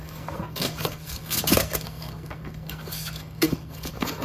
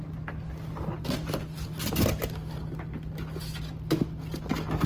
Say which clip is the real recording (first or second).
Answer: second